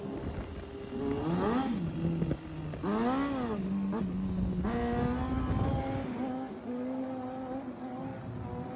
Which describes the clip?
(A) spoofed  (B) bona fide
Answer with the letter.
B